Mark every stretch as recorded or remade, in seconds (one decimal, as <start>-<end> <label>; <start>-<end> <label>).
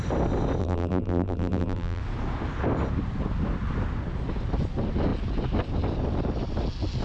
0.0-0.6 recorded; 0.6-2.0 remade; 2.0-7.0 recorded